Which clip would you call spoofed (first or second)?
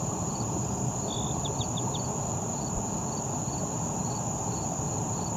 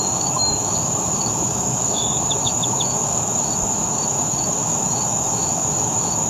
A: second